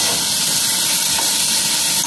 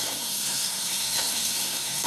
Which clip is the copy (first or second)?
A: second